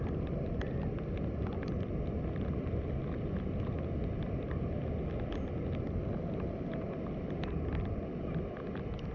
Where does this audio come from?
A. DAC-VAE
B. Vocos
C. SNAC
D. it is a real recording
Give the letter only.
D